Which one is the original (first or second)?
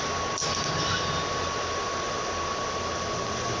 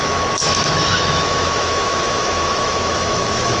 first